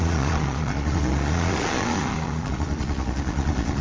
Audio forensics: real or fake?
fake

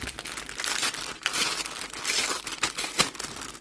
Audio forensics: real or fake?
real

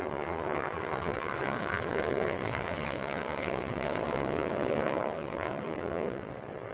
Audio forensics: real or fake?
fake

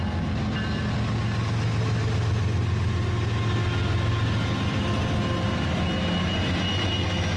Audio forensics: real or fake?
real